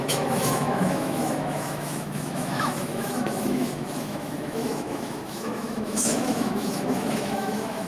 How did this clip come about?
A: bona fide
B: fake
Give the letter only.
B